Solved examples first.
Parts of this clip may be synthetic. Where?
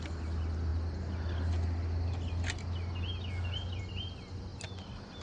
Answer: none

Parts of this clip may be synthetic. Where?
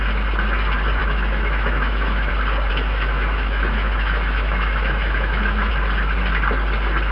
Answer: 1.0-2.3; 2.7-5.7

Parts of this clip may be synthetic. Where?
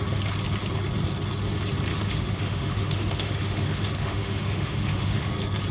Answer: 1.9-5.3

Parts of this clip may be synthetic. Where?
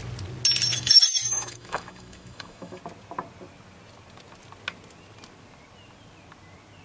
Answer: 0.7-2.8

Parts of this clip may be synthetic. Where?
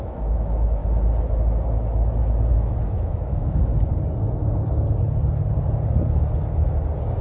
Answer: 0.0-0.8; 2.5-3.7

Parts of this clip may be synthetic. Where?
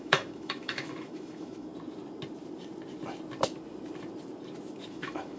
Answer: 0.0-1.7; 4.9-5.4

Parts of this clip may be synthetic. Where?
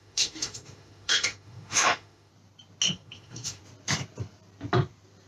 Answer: 0.0-2.3; 2.9-3.6